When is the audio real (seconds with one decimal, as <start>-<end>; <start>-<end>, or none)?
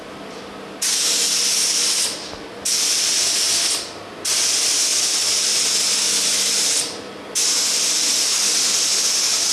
0.0-9.5